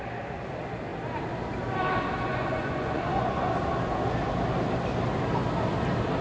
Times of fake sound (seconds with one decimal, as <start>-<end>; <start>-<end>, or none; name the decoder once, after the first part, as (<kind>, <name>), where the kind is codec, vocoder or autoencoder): 2.3-3.5 (vocoder, Vocos)